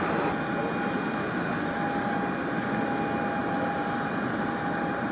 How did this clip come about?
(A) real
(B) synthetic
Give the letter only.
A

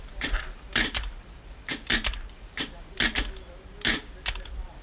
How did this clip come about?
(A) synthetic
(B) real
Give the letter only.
B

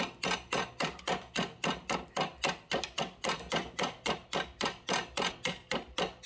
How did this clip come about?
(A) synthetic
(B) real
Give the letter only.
B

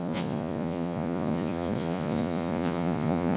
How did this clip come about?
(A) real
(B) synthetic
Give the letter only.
B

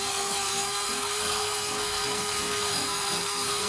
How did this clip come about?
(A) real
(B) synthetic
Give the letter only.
B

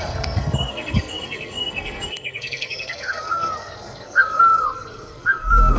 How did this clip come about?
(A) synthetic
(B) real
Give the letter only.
A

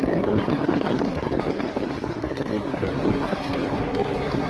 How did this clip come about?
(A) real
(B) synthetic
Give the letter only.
B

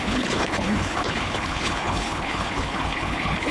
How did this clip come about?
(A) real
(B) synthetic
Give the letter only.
B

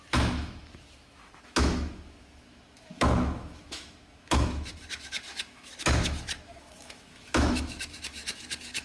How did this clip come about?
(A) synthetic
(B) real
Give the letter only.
A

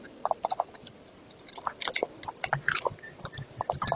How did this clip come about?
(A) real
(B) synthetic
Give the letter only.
A